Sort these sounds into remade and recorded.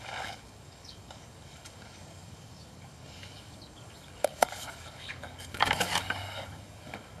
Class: remade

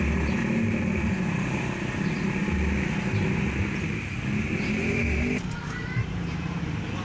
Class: recorded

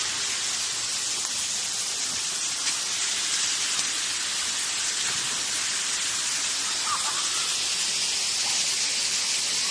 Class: recorded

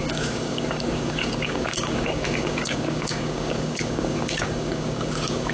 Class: remade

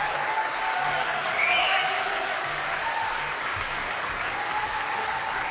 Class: remade